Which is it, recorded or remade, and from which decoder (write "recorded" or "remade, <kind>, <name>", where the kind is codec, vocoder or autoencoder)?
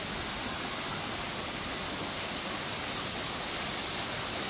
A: recorded